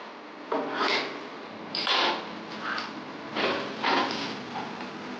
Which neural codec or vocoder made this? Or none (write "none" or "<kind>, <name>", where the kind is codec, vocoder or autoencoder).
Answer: none